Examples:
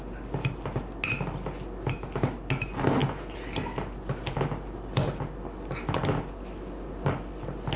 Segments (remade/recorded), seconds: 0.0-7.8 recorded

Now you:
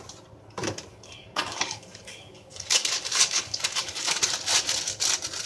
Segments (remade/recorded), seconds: 0.0-0.9 recorded; 0.9-4.2 remade; 4.2-5.5 recorded